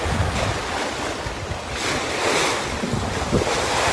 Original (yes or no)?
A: yes